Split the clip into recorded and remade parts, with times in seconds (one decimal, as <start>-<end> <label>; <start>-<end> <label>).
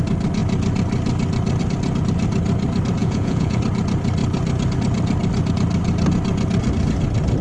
0.0-3.0 recorded; 3.0-3.6 remade; 3.6-7.4 recorded